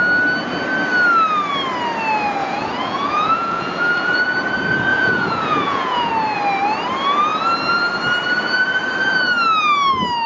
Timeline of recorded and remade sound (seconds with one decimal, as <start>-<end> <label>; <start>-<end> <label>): 0.0-2.4 recorded; 2.4-4.2 remade; 4.2-4.9 recorded; 4.9-6.1 remade; 6.1-10.3 recorded